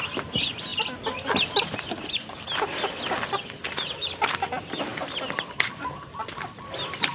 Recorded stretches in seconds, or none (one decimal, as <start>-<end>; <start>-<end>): 0.0-7.1